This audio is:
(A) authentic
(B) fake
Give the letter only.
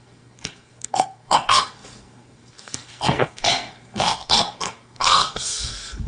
B